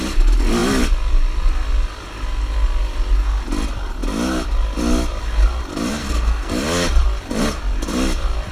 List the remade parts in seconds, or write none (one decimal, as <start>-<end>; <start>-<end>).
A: 6.0-6.5